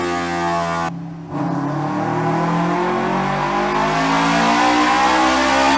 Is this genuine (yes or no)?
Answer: yes